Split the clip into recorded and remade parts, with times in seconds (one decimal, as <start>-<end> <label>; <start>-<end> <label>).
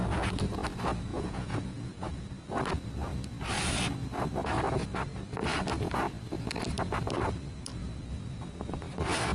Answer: 0.0-1.1 recorded; 1.1-2.3 remade; 2.3-9.3 recorded